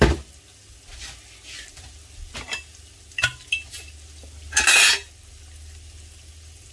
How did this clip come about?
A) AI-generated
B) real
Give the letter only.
B